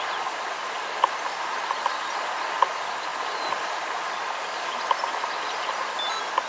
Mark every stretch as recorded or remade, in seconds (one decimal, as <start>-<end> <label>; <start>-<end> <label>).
0.0-6.5 recorded